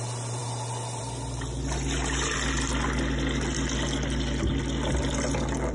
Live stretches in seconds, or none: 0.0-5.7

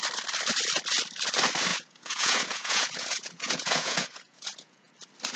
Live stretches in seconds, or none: 0.0-1.7; 4.9-5.4

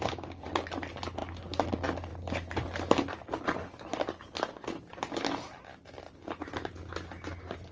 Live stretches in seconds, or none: 0.0-7.7

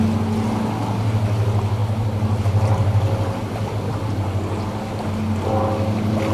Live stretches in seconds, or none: 0.0-6.3